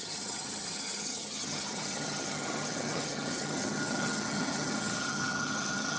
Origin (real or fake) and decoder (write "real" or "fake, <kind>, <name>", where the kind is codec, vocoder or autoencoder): fake, vocoder, HiFi-GAN